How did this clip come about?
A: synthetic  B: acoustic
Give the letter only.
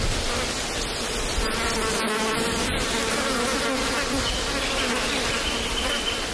B